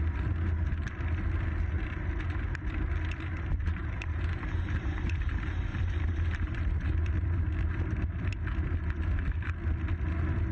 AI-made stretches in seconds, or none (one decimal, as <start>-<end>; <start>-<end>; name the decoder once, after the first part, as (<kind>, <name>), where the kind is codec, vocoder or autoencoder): 3.3-5.3 (vocoder, BigVGAN v2); 5.7-7.1